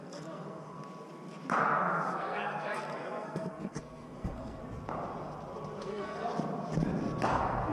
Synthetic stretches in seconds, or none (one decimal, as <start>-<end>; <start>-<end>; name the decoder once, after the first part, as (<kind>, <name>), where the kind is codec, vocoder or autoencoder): 0.0-0.8 (codec, SNAC); 1.6-4.6; 5.8-6.3; 7.3-7.7